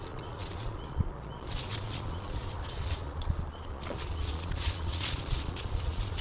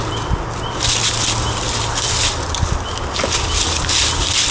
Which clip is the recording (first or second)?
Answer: second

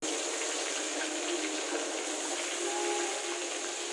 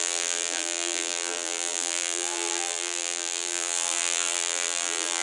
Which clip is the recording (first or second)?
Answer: first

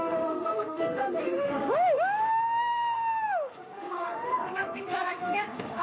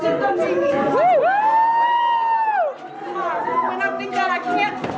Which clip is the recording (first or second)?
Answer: second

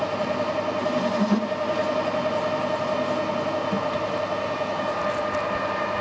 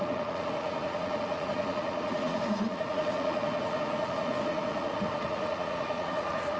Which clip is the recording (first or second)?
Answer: first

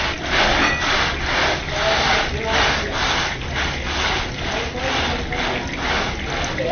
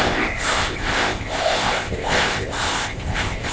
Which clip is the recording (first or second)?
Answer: first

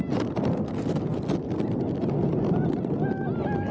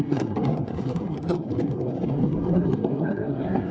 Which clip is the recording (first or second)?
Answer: first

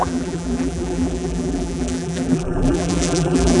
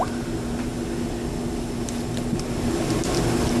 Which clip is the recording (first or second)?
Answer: second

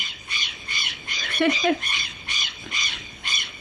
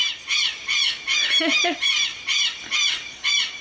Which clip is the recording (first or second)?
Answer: second